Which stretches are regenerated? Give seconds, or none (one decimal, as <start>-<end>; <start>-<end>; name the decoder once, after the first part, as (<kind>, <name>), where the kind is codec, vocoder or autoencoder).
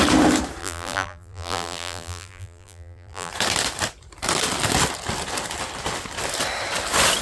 0.6-3.3 (vocoder, BigVGAN v2)